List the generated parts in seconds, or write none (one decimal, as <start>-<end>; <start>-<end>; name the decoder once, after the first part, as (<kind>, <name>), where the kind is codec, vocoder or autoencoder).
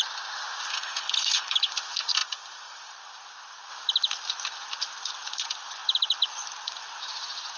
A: 0.7-1.7 (codec, HILCodec)